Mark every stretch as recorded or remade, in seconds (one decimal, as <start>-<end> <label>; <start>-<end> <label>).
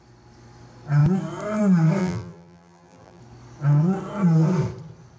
0.0-2.0 recorded; 2.0-3.2 remade; 3.2-5.2 recorded